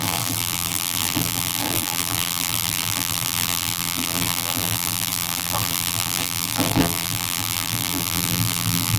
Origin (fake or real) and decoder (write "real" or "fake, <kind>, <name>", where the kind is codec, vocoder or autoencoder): fake, vocoder, BigVGAN v2